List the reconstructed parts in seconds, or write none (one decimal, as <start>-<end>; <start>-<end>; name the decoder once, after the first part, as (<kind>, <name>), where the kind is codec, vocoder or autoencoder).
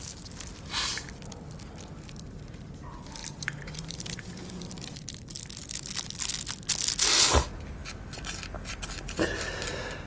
3.2-5.4 (vocoder, BigVGAN v2)